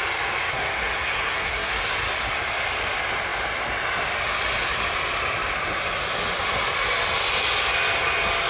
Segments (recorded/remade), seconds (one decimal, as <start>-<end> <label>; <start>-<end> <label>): 0.0-0.5 recorded; 0.5-1.7 remade; 1.7-8.5 recorded